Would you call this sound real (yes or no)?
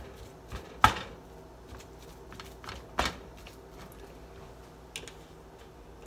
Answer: yes